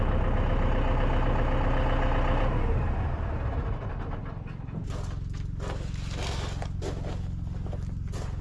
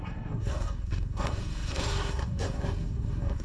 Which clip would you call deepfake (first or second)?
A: second